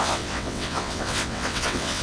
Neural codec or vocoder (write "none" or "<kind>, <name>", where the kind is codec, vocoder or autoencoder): vocoder, WaveNeXt